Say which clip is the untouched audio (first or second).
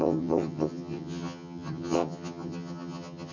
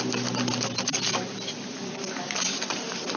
second